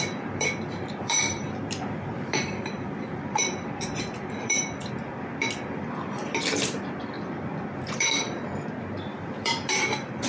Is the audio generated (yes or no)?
yes